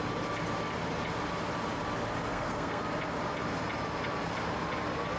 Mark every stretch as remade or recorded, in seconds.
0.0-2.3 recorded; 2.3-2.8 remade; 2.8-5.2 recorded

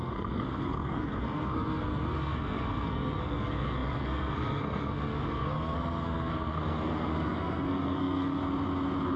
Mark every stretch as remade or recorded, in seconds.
0.0-8.4 remade; 8.4-9.2 recorded

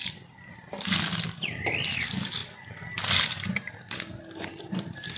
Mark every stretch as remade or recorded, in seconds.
0.0-5.2 recorded